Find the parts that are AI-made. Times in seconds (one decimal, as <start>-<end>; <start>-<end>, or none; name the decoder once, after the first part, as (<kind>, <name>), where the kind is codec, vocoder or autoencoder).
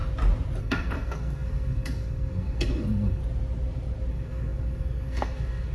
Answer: 0.6-3.2 (codec, SNAC); 4.1-5.7